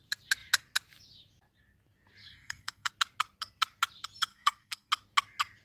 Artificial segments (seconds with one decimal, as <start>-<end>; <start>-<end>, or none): 2.2-2.9; 4.3-4.9